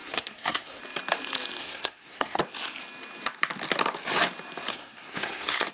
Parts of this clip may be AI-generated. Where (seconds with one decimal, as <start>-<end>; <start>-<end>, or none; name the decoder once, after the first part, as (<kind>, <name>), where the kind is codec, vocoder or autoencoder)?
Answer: 0.0-0.8 (codec, SNAC); 1.6-2.4; 4.7-5.7